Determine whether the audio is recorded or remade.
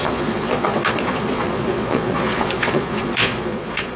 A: remade